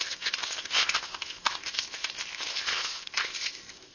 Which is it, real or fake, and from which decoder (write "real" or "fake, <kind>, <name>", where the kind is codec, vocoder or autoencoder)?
fake, codec, ZipCodec